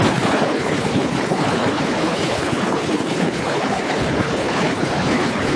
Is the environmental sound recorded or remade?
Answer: remade